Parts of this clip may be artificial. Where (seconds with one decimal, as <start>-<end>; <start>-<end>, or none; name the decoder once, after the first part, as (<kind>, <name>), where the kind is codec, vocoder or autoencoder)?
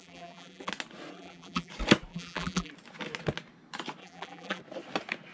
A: 0.0-0.7 (vocoder, BigVGAN v2); 1.1-1.7; 2.1-2.7; 4.0-4.6